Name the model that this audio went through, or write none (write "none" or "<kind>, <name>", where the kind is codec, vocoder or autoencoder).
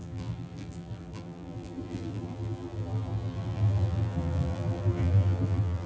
vocoder, BigVGAN v2